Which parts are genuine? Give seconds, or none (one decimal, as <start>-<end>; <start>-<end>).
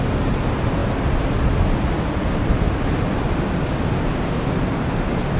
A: 0.0-5.4